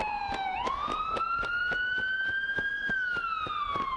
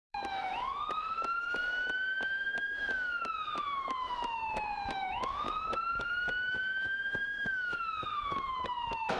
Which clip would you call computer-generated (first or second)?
second